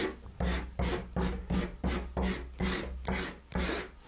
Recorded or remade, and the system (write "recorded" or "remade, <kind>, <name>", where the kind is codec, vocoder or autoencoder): recorded